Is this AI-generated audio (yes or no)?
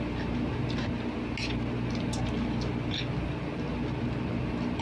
no